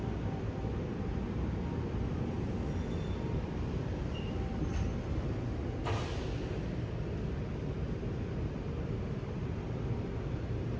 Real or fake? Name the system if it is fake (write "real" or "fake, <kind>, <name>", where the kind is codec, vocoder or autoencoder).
real